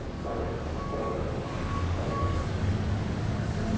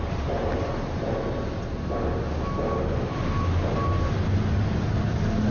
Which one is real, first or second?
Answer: second